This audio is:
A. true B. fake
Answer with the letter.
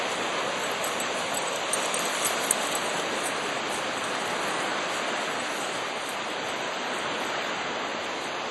A